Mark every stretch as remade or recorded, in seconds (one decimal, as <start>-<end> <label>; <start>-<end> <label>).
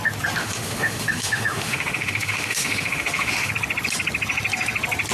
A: 0.0-0.4 recorded; 0.4-3.5 remade; 3.5-5.1 recorded